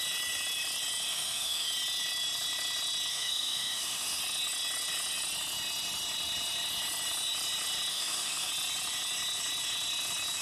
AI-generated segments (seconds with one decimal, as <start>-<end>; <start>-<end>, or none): 1.1-1.7; 3.1-4.2; 7.9-8.5